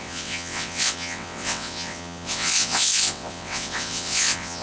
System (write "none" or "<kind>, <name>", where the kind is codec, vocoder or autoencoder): vocoder, WaveNeXt